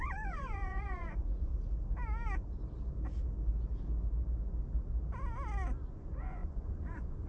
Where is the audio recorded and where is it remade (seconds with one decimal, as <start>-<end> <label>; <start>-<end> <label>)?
0.0-1.5 remade; 1.5-5.9 recorded; 5.9-7.3 remade